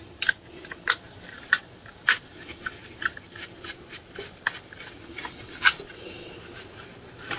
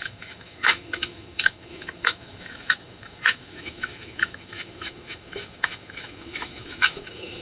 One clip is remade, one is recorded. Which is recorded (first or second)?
first